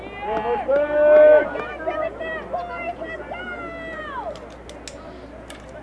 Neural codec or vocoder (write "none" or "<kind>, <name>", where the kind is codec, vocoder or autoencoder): none